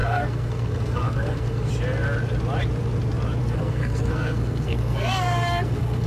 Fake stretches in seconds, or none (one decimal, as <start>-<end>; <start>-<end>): 0.0-1.7; 3.4-6.1